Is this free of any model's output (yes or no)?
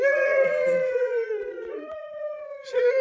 no